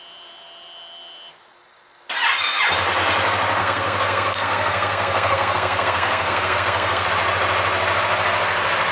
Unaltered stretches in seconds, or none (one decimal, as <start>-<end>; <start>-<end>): 0.0-3.6; 7.1-8.9